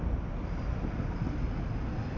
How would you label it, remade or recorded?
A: recorded